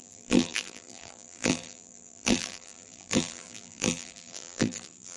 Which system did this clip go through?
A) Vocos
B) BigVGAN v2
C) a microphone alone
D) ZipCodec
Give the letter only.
B